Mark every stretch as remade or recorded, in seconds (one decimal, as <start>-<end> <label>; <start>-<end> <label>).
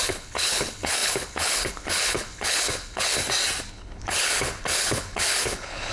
0.0-3.2 remade; 3.2-3.7 recorded; 3.7-5.9 remade